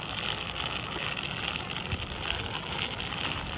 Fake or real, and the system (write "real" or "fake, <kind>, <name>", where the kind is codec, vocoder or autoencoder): real